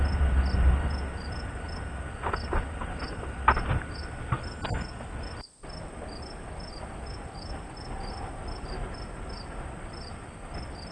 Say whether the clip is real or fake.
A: real